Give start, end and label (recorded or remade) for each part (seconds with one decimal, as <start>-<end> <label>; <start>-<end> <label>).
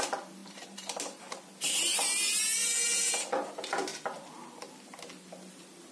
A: 0.0-0.4 recorded; 0.4-1.4 remade; 1.4-5.9 recorded